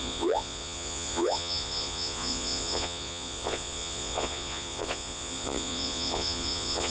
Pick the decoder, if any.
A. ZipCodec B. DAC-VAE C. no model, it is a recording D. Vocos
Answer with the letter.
D